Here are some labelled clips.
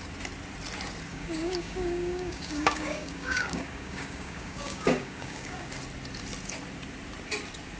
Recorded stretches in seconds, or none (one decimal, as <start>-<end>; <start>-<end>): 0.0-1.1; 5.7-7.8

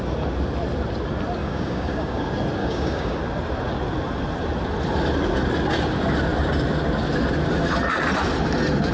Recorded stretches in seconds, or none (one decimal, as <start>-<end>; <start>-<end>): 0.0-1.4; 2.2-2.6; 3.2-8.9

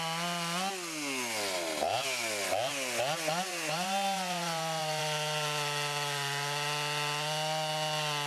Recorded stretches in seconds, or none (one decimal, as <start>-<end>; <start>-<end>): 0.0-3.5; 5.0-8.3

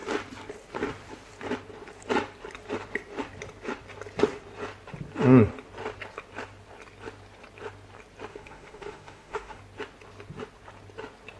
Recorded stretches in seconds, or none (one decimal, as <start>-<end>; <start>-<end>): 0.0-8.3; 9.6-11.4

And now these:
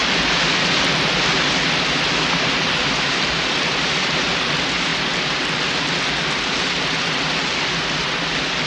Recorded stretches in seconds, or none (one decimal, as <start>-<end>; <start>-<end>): 0.0-8.7

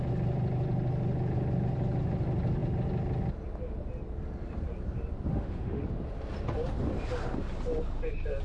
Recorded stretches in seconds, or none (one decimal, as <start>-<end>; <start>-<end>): 0.0-5.3; 5.8-8.4

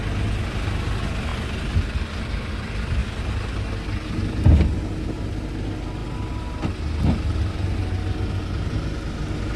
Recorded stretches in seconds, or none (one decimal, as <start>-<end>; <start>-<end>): 0.0-9.6

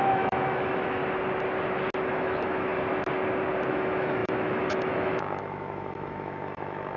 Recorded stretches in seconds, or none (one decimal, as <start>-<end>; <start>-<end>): 1.0-2.0; 2.7-3.7